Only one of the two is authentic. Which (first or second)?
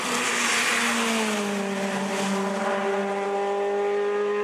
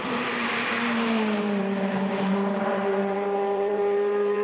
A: first